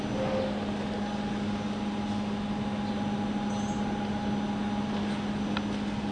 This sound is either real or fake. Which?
real